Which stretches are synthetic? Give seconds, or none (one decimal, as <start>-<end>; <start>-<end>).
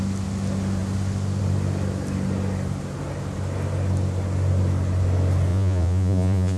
5.5-6.6